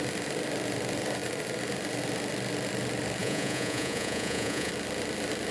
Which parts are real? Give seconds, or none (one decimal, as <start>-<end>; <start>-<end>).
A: 0.0-3.2; 4.7-5.5

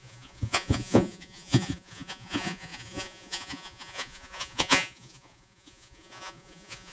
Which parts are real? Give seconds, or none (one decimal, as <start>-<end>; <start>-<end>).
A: none

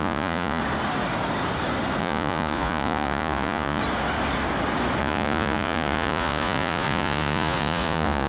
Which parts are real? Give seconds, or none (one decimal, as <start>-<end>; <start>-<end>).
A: 0.6-2.0; 3.8-5.0

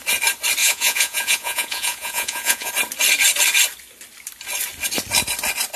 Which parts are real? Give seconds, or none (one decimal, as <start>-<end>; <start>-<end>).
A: 0.0-0.6; 2.7-5.8